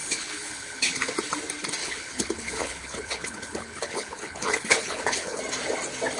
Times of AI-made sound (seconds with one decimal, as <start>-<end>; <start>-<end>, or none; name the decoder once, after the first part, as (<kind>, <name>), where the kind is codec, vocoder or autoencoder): 0.0-1.1 (codec, HILCodec); 1.8-5.4